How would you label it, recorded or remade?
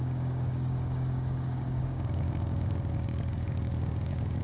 remade